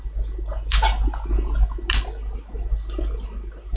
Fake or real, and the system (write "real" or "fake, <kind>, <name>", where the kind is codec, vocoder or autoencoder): real